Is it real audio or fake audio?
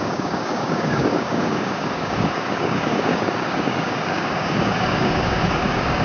fake